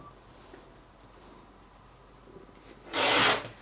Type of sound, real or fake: real